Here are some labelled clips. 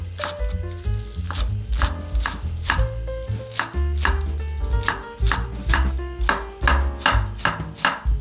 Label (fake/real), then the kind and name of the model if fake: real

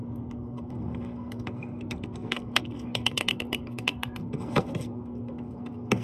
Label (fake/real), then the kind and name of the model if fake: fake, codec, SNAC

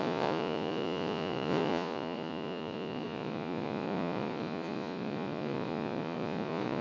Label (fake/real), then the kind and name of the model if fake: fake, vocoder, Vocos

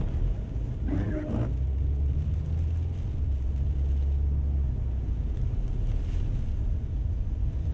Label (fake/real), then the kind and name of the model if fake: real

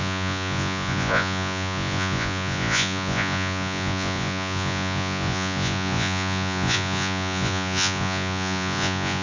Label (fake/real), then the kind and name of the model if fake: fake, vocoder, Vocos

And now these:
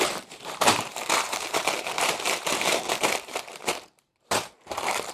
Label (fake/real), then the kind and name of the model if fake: fake, vocoder, BigVGAN v2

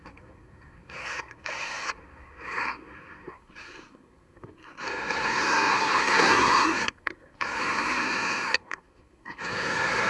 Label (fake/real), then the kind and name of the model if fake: fake, codec, SNAC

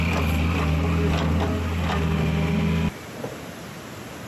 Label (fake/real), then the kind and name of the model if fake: real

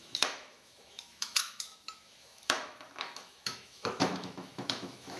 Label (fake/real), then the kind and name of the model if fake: fake, autoencoder, DAC-VAE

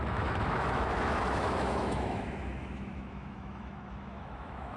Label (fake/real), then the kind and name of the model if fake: fake, autoencoder, DAC-VAE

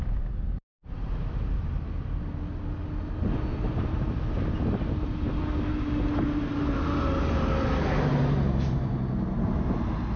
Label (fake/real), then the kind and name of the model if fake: real